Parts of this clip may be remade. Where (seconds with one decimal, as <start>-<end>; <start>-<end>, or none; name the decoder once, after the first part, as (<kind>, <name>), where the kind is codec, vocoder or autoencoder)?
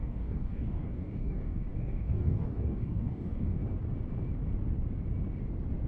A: 0.0-3.6 (codec, DAC)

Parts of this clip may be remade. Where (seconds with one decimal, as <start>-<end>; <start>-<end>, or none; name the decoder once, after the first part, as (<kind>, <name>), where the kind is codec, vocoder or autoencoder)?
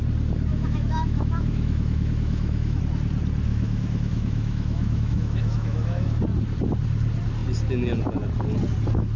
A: 0.5-2.8 (autoencoder, DAC-VAE); 3.5-6.2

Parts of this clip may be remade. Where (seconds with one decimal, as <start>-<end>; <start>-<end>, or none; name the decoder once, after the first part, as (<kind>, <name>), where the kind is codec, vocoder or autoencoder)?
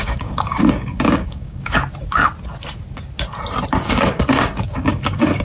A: 0.0-1.8 (codec, DAC); 3.9-5.4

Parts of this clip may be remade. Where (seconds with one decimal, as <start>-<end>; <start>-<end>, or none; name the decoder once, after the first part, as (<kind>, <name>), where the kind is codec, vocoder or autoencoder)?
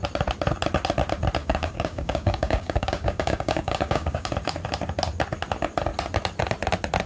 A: 1.4-4.3 (codec, DAC)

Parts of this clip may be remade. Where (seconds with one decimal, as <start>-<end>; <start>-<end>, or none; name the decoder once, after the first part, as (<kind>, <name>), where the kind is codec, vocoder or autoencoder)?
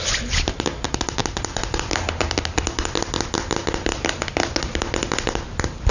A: none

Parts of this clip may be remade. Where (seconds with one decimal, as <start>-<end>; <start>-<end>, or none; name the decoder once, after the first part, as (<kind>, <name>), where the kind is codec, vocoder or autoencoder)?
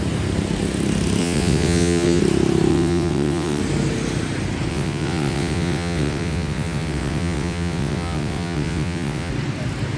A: 1.2-2.2 (vocoder, WaveNeXt); 2.7-3.6; 4.7-9.3